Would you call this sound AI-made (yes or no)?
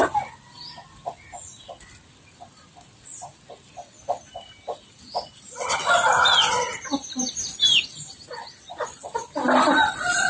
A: no